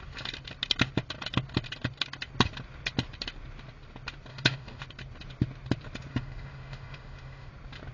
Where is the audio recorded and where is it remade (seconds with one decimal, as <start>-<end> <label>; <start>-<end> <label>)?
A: 0.0-4.3 recorded; 4.3-4.8 remade; 4.8-6.1 recorded; 6.1-7.5 remade; 7.5-7.9 recorded